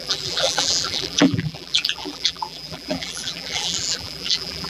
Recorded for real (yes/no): no